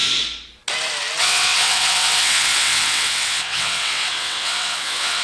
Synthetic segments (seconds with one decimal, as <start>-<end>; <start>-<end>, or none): 1.2-5.2

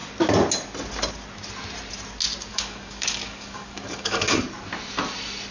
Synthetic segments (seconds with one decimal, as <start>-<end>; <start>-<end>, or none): 2.5-4.4

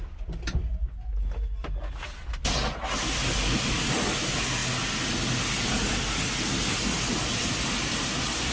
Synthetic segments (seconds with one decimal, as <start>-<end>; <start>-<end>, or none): none